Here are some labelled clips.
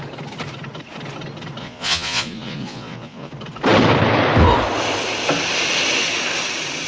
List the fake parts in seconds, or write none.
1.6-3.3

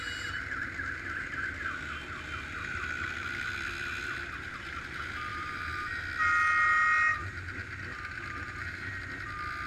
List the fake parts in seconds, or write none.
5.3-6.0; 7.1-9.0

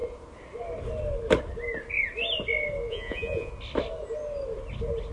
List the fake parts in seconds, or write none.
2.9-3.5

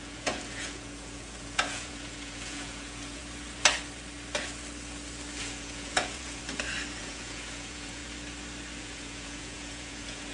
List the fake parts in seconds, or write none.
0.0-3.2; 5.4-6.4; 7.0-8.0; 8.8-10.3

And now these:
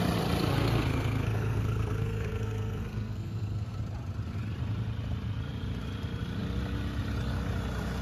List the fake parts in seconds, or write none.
0.5-3.8